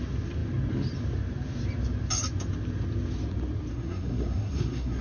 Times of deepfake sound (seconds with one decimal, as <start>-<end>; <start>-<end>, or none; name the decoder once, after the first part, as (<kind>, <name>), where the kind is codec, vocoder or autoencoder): 3.7-5.0 (codec, SNAC)